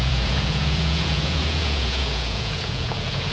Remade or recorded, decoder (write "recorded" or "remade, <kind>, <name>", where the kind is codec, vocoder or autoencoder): remade, vocoder, Vocos